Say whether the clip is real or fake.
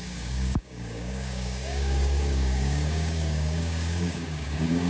fake